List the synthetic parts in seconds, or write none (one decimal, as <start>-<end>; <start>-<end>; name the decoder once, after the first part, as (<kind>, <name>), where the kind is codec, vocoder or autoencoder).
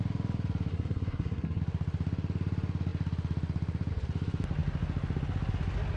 0.7-1.6 (codec, SNAC)